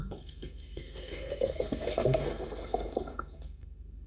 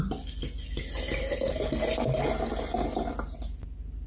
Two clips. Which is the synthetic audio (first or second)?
first